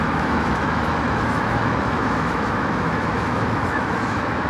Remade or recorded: remade